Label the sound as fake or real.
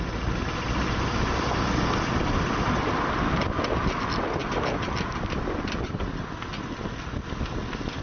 real